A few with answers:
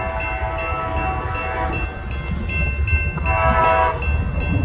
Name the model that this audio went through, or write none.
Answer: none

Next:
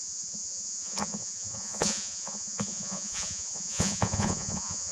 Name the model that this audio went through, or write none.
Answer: vocoder, Vocos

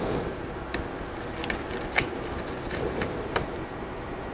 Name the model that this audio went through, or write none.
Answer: none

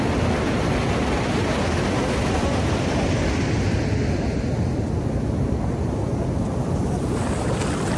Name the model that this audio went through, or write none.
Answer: none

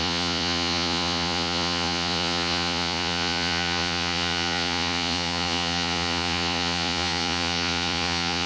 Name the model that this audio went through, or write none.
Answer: vocoder, Vocos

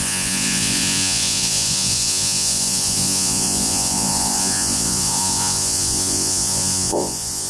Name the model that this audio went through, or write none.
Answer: vocoder, Vocos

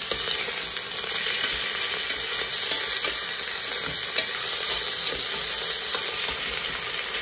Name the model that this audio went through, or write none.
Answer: none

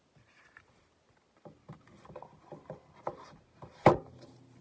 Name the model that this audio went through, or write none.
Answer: none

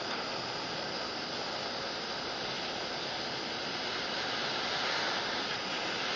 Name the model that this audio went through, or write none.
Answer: none